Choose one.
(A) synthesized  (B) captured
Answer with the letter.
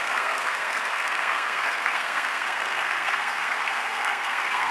A